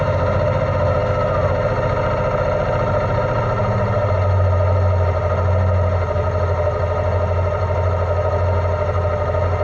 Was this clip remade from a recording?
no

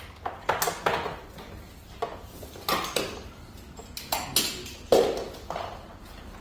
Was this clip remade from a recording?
no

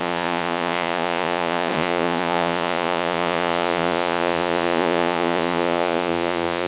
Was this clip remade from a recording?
yes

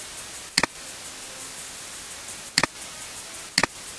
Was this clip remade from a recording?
no